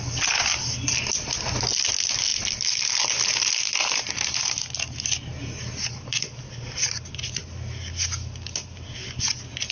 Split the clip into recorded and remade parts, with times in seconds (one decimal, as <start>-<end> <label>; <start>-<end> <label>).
0.0-9.7 recorded